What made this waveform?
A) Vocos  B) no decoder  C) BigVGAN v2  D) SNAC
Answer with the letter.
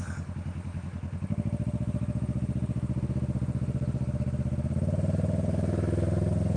B